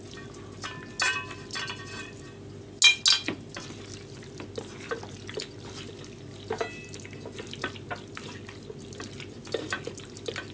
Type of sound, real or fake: real